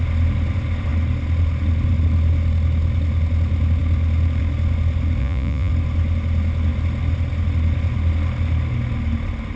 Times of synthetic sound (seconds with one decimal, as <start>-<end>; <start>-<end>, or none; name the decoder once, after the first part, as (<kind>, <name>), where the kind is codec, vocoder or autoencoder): 5.2-5.7 (vocoder, Vocos)